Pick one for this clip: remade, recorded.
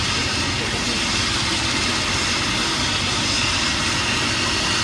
recorded